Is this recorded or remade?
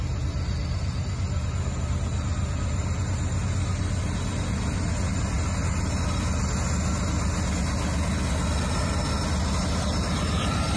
recorded